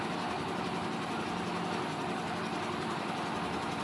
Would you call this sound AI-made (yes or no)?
no